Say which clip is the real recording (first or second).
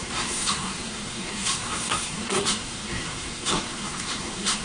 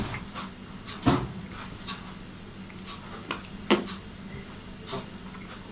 second